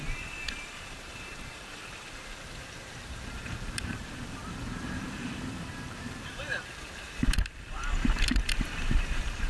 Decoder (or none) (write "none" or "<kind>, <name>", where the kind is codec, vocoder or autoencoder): vocoder, BigVGAN v2